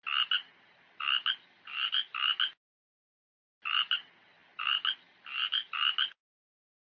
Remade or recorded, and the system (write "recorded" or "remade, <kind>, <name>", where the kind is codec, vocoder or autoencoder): recorded